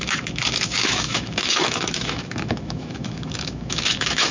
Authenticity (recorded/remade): remade